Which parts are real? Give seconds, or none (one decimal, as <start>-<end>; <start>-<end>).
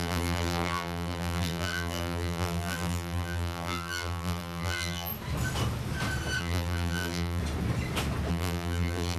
5.1-6.4; 7.4-8.3